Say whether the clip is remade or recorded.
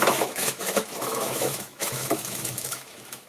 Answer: remade